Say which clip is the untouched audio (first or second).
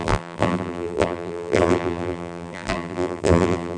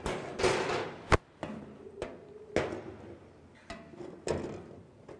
second